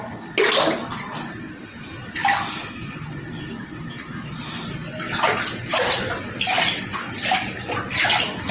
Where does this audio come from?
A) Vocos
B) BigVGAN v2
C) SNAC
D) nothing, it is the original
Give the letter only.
D